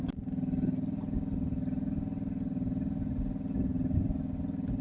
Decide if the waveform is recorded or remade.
recorded